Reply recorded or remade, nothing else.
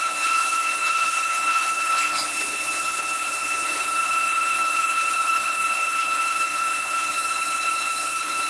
remade